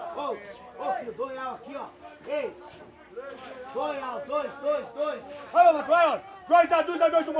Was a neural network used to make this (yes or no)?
no